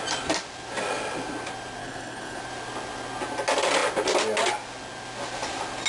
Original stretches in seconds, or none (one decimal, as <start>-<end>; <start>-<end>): 0.0-1.8; 2.4-5.9